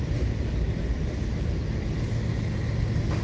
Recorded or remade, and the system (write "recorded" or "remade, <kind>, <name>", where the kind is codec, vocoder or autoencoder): recorded